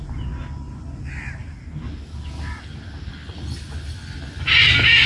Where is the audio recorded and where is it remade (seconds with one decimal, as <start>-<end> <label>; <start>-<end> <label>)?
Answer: 0.0-5.1 recorded